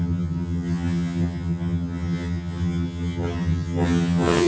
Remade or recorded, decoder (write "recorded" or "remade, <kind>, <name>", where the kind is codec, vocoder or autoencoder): remade, vocoder, HiFi-GAN